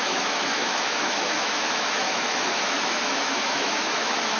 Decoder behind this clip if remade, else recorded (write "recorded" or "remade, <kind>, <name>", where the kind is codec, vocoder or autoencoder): remade, autoencoder, DAC-VAE